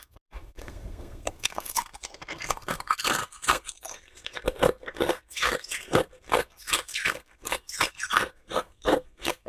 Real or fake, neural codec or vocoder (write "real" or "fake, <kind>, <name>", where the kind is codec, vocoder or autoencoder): fake, codec, SNAC